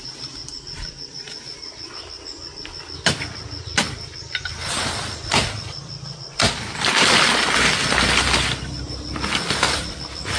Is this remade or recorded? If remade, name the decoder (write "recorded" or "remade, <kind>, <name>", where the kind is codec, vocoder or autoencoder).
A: recorded